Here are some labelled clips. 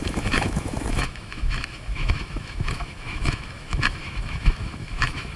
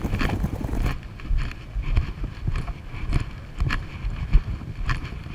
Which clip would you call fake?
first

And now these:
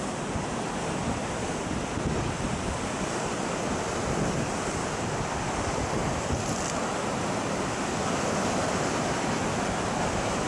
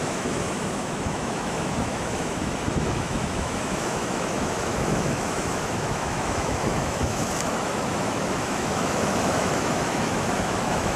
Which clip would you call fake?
second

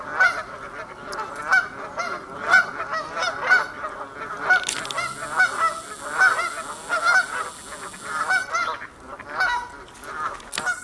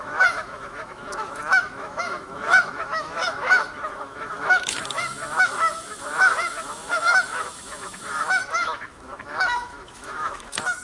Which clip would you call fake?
second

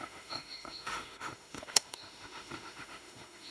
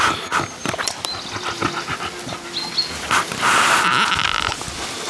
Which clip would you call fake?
first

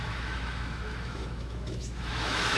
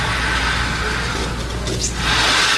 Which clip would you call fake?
first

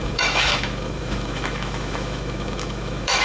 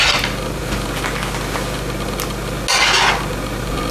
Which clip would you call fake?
first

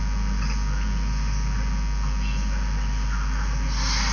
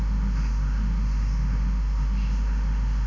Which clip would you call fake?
second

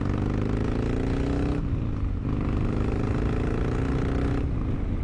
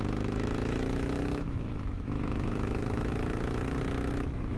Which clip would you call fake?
second